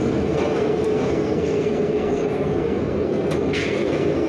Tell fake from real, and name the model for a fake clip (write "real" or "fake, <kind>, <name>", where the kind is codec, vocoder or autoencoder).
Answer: fake, codec, SNAC